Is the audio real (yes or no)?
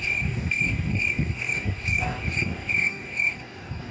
no